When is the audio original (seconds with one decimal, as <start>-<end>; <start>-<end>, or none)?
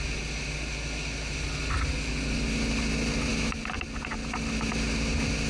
0.0-5.5